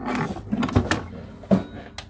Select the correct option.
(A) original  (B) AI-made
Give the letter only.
A